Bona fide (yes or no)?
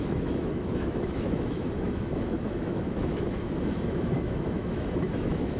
no